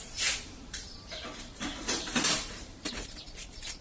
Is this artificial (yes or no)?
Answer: yes